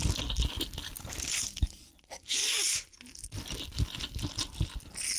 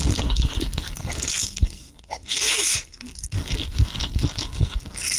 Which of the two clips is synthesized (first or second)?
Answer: second